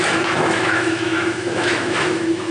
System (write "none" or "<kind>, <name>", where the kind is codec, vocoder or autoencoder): autoencoder, DAC-VAE